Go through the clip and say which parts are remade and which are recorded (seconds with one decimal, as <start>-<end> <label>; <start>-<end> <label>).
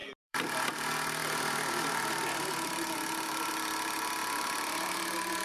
0.0-0.7 remade; 0.7-1.2 recorded; 1.2-2.7 remade; 2.7-4.2 recorded; 4.2-5.0 remade; 5.0-5.4 recorded